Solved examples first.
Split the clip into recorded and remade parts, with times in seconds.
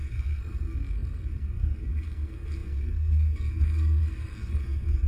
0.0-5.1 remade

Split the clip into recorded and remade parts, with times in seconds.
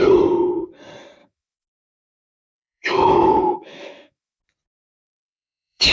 0.0-1.2 recorded; 1.2-4.4 remade; 4.4-5.0 recorded; 5.0-5.9 remade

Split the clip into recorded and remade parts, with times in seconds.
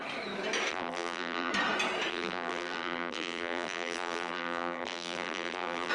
0.0-0.7 recorded; 0.7-1.5 remade; 1.5-2.1 recorded; 2.1-5.9 remade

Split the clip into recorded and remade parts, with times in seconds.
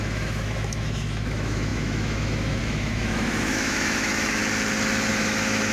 0.0-4.4 remade; 4.4-5.1 recorded; 5.1-5.7 remade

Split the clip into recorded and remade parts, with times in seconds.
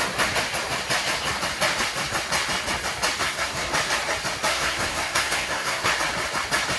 0.0-3.2 recorded; 3.2-3.7 remade; 3.7-4.5 recorded; 4.5-5.9 remade; 5.9-6.8 recorded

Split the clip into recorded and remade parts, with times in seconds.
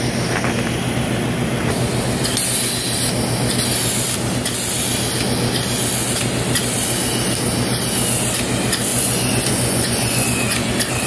0.0-8.9 recorded; 8.9-10.7 remade; 10.7-11.1 recorded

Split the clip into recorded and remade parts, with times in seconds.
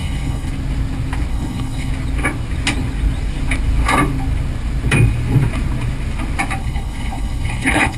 0.0-0.5 remade; 0.5-1.3 recorded; 1.3-1.9 remade; 1.9-6.6 recorded; 6.6-8.0 remade